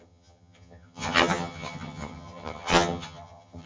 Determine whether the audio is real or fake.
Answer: fake